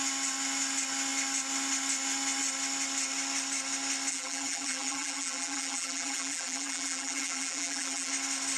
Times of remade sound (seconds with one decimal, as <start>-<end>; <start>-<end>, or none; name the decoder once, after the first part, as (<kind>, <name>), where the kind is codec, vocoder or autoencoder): 4.1-8.1 (vocoder, BigVGAN v2)